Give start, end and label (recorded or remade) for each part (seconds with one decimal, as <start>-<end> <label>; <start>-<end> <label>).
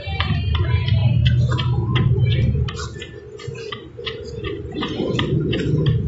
0.0-6.1 recorded